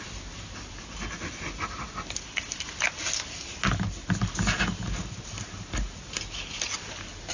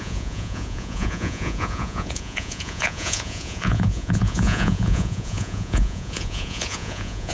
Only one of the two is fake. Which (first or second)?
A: second